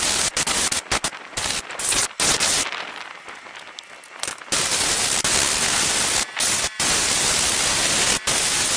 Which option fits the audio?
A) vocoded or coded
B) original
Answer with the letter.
B